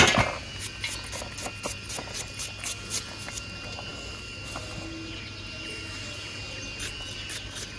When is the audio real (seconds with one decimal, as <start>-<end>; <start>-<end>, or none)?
0.0-7.8